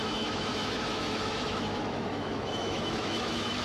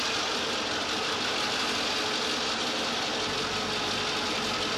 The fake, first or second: first